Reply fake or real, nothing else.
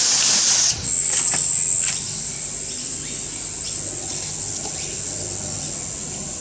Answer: real